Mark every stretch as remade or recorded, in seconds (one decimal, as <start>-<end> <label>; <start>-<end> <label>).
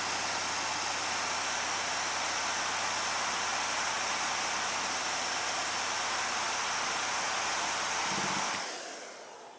0.0-3.5 recorded; 3.5-8.0 remade; 8.0-9.6 recorded